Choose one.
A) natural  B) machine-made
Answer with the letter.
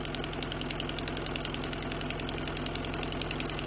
A